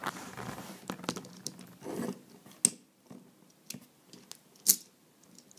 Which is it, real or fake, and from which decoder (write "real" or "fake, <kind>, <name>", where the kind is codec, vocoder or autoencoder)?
real